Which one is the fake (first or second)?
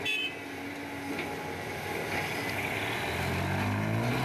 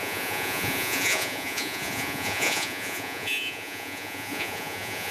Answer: second